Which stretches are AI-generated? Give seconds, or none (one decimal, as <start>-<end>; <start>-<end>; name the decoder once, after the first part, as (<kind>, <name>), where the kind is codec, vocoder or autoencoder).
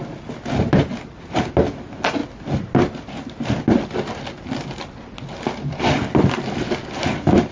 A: none